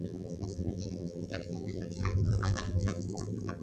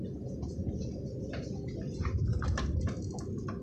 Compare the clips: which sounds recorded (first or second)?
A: second